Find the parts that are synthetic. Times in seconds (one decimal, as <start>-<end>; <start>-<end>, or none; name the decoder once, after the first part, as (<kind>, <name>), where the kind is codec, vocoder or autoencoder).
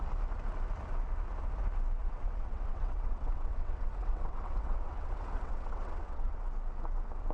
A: 2.0-6.4 (vocoder, WaveNeXt)